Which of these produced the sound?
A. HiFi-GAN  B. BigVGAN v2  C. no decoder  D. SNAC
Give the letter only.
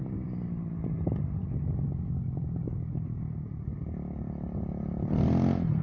C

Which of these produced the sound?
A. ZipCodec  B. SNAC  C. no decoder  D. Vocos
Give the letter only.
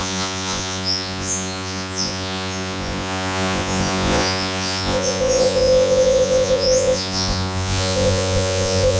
D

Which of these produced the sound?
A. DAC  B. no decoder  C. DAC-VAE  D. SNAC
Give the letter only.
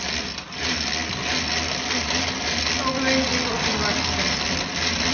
B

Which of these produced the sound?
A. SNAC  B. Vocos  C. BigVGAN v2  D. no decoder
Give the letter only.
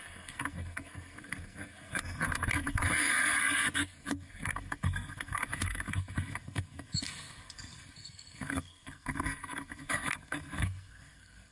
A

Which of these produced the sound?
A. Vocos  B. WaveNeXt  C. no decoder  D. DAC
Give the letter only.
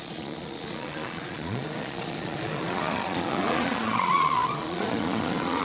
A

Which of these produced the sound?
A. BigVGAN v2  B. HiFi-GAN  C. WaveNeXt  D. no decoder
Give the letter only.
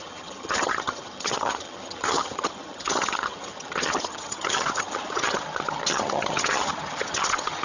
B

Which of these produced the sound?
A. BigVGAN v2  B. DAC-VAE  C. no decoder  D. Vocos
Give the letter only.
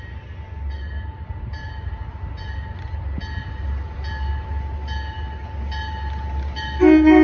C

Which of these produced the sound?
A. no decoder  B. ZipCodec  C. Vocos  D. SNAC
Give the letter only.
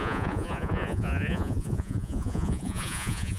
C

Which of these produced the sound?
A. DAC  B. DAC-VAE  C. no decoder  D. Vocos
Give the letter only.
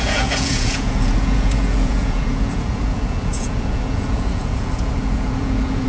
D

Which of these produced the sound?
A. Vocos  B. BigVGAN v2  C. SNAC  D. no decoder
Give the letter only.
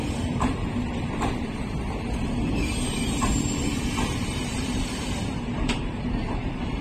B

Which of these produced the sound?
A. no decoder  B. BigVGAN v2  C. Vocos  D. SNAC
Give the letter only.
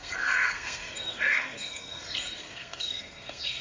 D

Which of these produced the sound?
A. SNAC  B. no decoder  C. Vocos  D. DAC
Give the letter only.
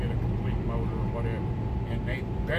B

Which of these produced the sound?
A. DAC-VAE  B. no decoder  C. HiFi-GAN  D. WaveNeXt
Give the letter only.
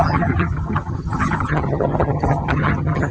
C